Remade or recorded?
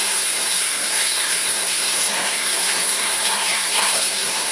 remade